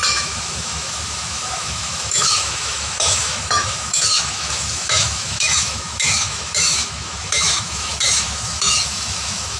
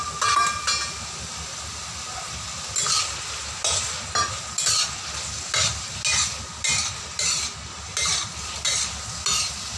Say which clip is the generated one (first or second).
first